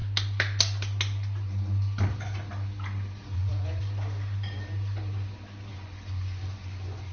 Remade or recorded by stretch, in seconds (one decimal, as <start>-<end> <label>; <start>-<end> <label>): 0.0-3.2 recorded; 3.2-3.8 remade; 3.8-5.7 recorded; 5.7-7.1 remade